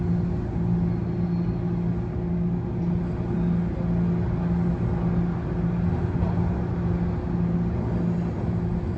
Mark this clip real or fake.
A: real